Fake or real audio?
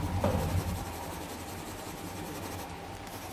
real